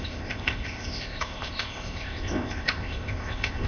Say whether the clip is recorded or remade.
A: remade